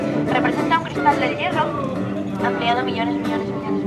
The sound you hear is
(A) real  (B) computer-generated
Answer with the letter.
B